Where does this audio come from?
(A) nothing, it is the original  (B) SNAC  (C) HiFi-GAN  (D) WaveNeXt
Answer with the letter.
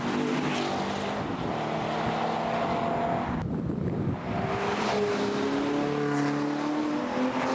A